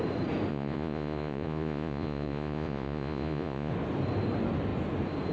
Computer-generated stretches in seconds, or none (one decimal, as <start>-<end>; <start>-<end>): 0.5-3.7